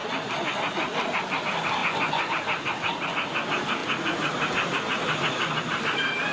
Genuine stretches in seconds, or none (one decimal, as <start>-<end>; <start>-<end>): 0.0-1.8; 2.3-6.3